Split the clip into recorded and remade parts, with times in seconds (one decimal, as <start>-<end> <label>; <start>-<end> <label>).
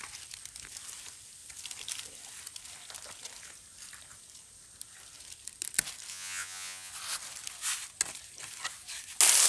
0.0-6.1 recorded; 6.1-6.9 remade; 6.9-9.5 recorded